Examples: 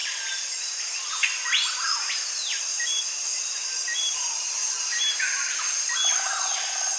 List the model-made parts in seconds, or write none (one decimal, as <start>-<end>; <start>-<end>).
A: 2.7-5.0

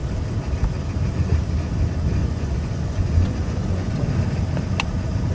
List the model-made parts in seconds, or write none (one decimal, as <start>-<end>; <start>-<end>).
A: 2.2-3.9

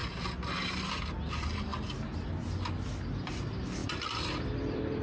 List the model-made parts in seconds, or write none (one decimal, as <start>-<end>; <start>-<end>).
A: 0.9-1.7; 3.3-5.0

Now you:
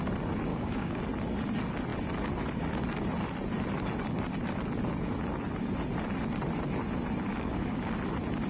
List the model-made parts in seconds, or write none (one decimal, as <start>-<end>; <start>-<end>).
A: 0.5-1.0; 7.3-7.9

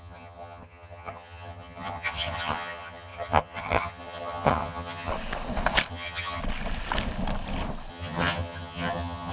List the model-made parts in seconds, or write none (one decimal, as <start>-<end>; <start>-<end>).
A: 0.0-5.1; 5.9-6.4; 7.9-9.3

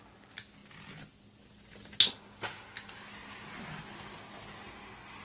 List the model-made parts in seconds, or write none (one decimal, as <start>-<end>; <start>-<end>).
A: none